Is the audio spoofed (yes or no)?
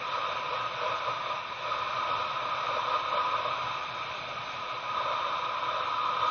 no